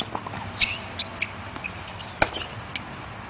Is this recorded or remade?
recorded